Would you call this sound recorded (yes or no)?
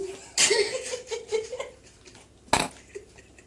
yes